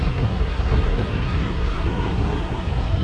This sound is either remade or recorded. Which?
remade